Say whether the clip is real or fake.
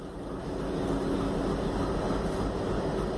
real